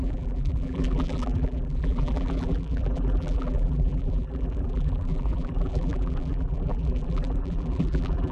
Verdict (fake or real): fake